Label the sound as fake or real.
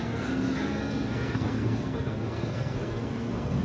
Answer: fake